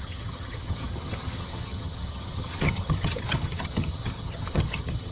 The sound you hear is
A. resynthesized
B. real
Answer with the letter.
A